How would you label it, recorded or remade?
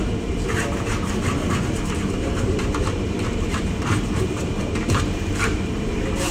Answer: remade